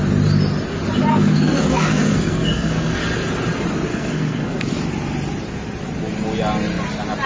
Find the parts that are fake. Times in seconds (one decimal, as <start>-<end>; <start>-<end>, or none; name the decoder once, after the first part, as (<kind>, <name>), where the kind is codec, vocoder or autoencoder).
1.1-3.0 (codec, SNAC); 3.9-4.7